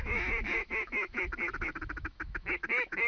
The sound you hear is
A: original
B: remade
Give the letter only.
B